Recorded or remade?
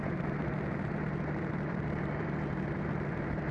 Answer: remade